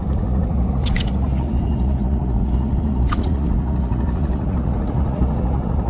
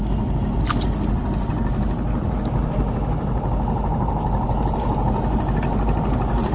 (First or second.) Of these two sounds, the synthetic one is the first